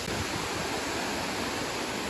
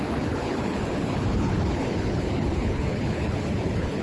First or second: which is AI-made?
second